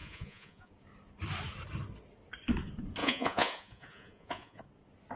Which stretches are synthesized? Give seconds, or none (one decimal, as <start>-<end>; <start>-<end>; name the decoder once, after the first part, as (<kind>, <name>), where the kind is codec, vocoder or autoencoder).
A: 0.0-0.7 (vocoder, Vocos); 3.0-4.6